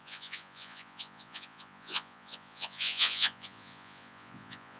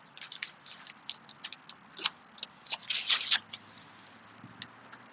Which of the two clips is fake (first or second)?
first